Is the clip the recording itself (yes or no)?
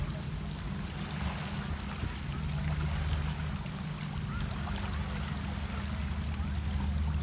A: yes